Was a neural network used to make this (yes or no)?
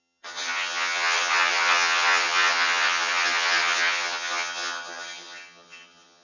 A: yes